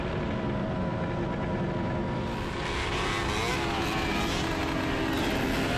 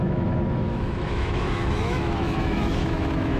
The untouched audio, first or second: first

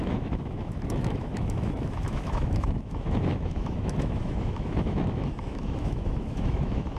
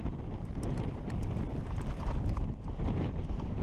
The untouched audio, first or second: second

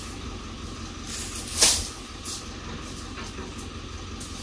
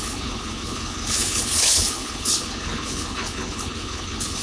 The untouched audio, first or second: first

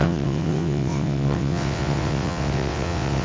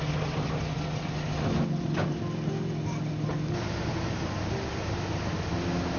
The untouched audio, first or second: second